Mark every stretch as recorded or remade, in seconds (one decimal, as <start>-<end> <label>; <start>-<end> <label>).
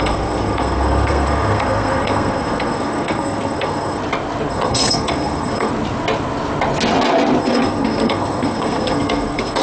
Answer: 0.0-4.0 remade; 4.0-4.5 recorded; 4.5-5.7 remade; 5.7-7.4 recorded; 7.4-9.6 remade